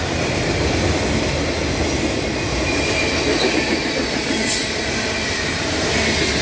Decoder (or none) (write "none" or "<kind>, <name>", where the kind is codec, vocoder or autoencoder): none